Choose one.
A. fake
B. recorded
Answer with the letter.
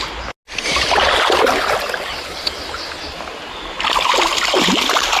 B